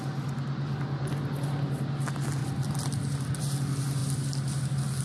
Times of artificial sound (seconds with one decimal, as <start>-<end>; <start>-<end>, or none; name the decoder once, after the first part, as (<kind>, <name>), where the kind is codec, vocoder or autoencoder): none